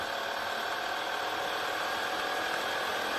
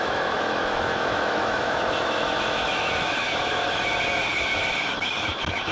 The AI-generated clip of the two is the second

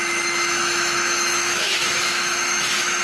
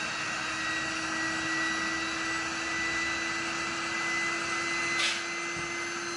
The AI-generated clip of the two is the first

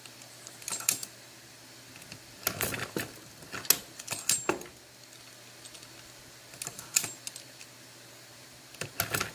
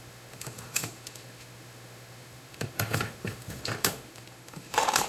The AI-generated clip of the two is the second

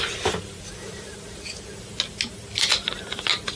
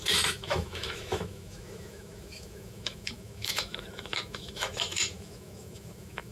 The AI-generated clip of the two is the second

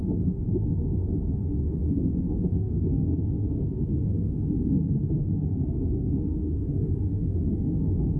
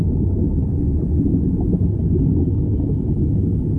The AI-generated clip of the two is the first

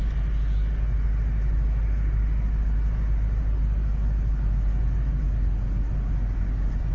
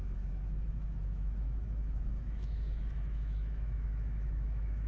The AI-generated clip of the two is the second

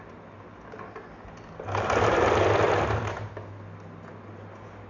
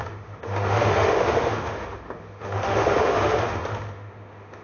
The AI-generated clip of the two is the second